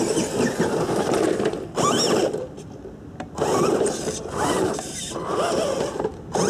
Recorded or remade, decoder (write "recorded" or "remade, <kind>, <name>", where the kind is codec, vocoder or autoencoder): recorded